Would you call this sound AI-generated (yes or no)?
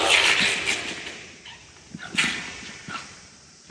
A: no